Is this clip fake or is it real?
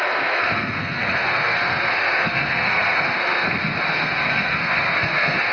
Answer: fake